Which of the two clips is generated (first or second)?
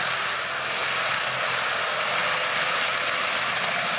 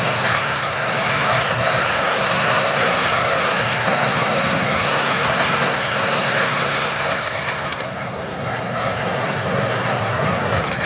second